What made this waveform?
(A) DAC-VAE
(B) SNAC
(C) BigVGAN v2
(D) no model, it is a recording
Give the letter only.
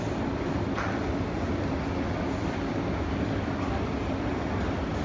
D